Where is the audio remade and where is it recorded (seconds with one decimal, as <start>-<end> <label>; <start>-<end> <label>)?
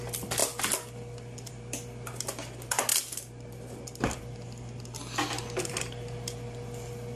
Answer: 0.0-7.2 recorded